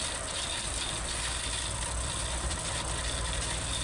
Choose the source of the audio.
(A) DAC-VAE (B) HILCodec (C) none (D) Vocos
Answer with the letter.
C